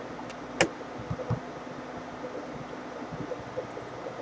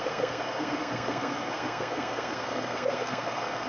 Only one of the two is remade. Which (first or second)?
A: second